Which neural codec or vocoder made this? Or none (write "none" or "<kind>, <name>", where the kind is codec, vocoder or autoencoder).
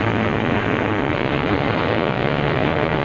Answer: vocoder, Vocos